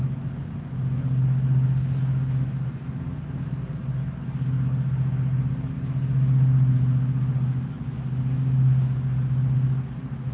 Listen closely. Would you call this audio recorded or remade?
recorded